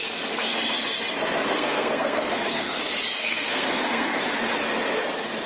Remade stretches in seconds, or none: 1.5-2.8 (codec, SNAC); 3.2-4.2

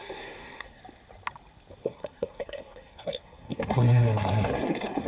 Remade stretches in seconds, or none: 0.0-0.8 (codec, SNAC); 1.8-5.1

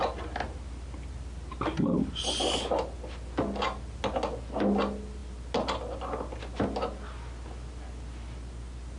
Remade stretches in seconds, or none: none

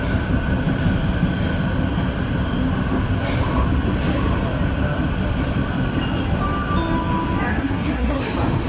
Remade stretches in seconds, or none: 7.5-8.2 (codec, SNAC)

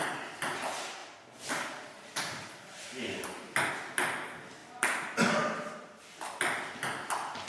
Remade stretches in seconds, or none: none

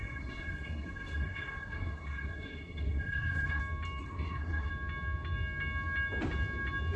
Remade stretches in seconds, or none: 0.0-3.6 (codec, SNAC); 4.0-4.7

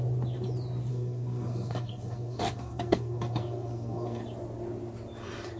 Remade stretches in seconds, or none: 0.9-4.2 (codec, SNAC)

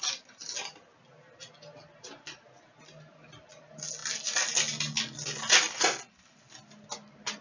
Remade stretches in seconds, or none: none